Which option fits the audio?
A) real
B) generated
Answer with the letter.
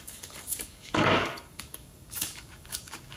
B